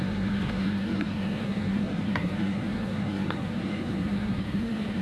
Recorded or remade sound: remade